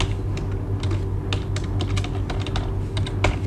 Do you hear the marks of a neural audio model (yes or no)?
no